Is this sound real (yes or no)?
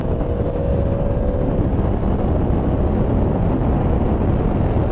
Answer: yes